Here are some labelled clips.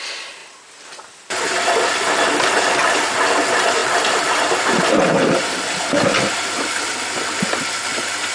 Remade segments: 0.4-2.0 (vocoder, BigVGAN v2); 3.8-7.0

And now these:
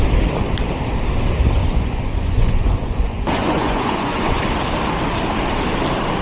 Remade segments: 1.6-4.4 (vocoder, Vocos)

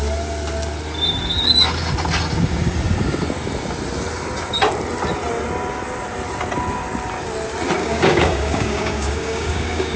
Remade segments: 7.8-10.0 (codec, DAC)

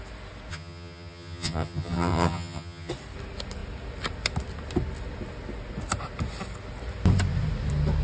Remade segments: 0.5-2.9 (vocoder, HiFi-GAN)